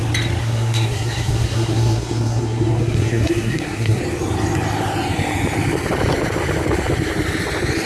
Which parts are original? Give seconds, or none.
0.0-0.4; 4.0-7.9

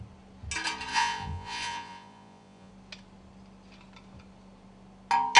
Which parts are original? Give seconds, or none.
0.0-0.9; 2.7-5.4

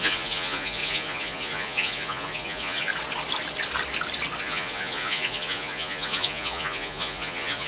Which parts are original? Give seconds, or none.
2.9-4.4

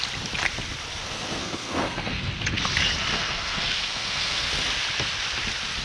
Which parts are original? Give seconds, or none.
0.0-1.0; 2.3-3.1; 4.5-5.8

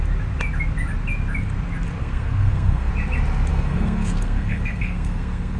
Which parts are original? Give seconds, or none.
0.0-2.0; 2.9-3.5

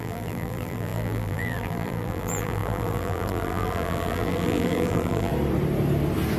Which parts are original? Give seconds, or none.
5.3-6.4

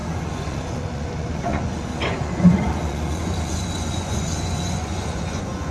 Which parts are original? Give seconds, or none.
none